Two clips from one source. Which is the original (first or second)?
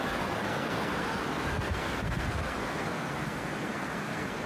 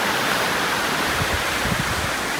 second